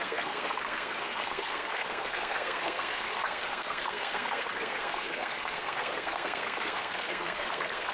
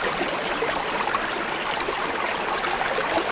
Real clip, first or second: second